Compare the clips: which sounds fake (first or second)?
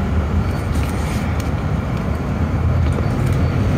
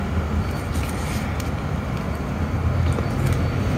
first